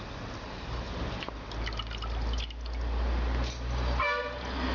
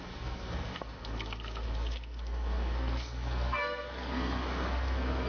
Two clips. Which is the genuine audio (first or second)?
first